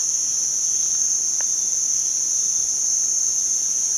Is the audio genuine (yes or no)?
yes